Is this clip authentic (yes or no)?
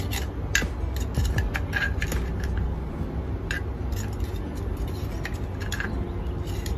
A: yes